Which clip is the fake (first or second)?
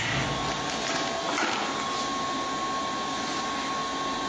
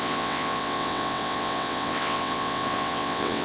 second